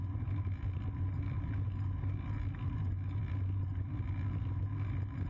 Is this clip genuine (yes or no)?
yes